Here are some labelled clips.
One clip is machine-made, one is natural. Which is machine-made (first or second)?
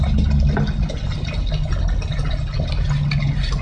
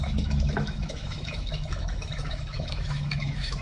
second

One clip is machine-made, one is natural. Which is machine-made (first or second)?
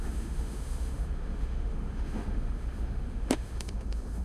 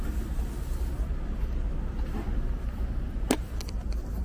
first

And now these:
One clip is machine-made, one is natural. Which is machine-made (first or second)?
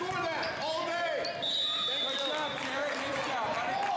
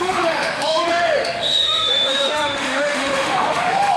second